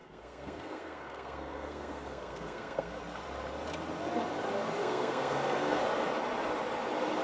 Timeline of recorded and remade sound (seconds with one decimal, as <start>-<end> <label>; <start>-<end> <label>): 0.0-3.0 remade; 3.0-4.8 recorded; 4.8-5.8 remade; 5.8-7.2 recorded